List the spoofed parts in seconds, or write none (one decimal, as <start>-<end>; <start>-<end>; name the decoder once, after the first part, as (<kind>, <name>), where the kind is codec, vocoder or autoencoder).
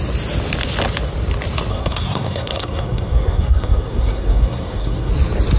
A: 1.7-5.1 (codec, SNAC)